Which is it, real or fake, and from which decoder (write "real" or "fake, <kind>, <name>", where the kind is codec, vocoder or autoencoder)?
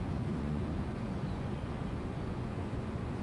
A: fake, vocoder, Vocos